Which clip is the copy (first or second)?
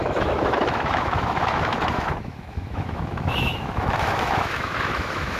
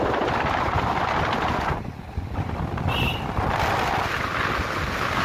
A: first